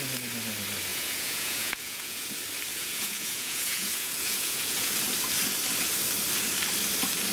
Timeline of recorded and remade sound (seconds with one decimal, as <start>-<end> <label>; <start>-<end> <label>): 0.0-0.9 recorded; 0.9-2.3 remade; 2.3-2.7 recorded; 2.7-4.9 remade; 4.9-7.3 recorded